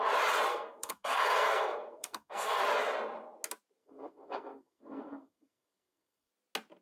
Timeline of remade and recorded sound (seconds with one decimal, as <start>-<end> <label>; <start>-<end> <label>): 0.0-0.5 recorded; 0.5-2.6 remade; 2.6-3.8 recorded; 3.8-6.3 remade; 6.3-6.8 recorded